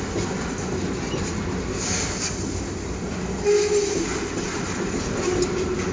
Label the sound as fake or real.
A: real